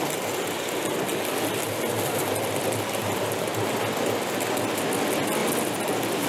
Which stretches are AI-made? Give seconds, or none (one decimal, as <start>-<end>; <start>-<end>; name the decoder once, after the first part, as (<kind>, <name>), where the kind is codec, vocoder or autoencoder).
3.0-3.8 (vocoder, BigVGAN v2)